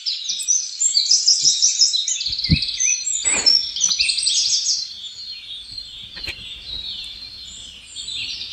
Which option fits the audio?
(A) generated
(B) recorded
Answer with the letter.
B